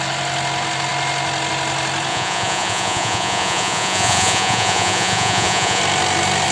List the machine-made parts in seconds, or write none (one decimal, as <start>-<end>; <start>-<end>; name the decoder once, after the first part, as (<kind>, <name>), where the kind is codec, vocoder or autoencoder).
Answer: 2.1-5.8 (vocoder, Vocos)